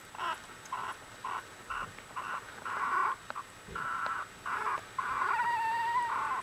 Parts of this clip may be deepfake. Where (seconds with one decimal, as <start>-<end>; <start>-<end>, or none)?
none